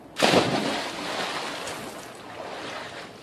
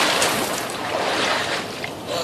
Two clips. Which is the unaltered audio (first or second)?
first